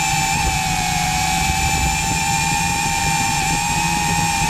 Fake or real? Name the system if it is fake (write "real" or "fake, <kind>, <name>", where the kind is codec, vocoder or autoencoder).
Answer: fake, vocoder, BigVGAN v2